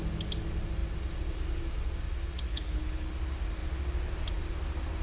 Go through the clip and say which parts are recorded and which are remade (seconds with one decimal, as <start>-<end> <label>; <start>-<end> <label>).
0.0-2.5 recorded; 2.5-3.1 remade; 3.1-5.0 recorded